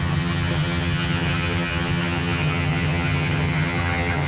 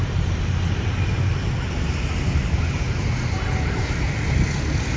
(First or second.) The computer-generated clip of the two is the first